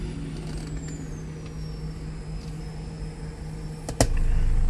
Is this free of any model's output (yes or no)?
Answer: yes